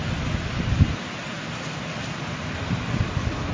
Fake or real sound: fake